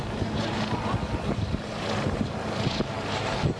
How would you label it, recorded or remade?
recorded